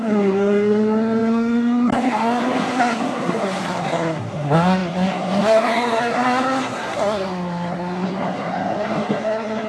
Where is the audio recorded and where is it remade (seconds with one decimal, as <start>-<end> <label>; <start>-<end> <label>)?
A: 0.0-9.7 remade